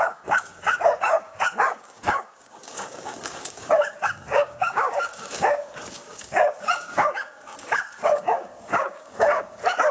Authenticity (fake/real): fake